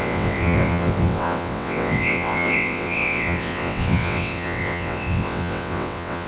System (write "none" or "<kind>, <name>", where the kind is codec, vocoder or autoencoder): vocoder, WaveNeXt